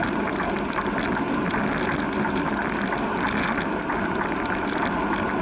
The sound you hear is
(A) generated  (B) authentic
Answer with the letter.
B